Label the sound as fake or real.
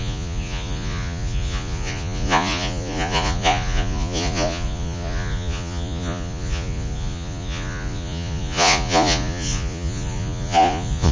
fake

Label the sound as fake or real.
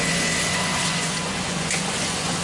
fake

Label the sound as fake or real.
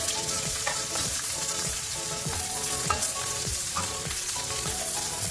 fake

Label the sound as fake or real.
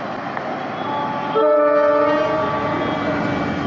real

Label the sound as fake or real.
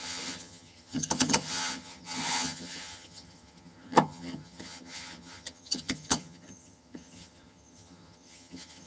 fake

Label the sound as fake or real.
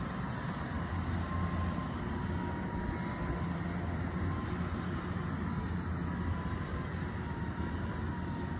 real